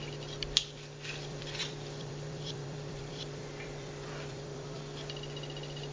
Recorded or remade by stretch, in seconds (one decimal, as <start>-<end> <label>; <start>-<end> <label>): 0.0-1.3 recorded; 1.3-4.8 remade; 4.8-5.9 recorded